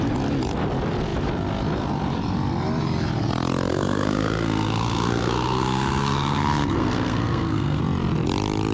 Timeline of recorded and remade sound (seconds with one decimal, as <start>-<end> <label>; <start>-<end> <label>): 0.0-3.7 recorded; 3.7-7.8 remade; 7.8-8.7 recorded